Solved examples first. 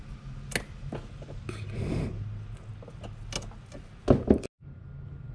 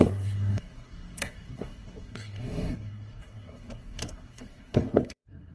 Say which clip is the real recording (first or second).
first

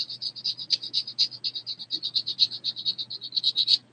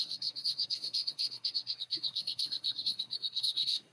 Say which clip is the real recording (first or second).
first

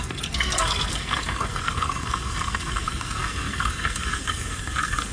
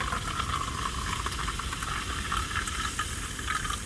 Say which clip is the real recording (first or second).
second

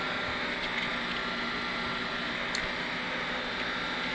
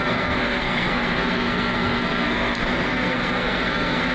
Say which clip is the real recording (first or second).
first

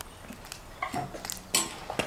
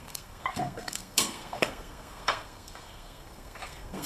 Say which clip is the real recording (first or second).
first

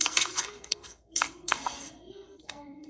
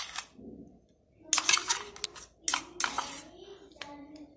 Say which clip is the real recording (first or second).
second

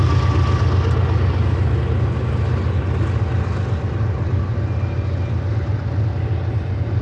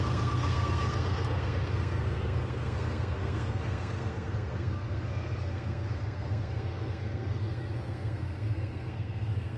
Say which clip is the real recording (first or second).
first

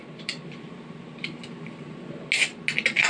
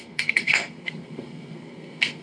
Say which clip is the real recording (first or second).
first